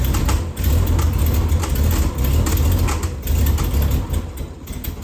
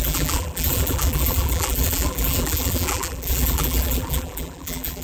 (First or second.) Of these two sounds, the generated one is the second